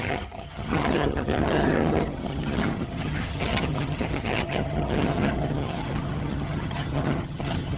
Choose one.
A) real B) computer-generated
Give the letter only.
B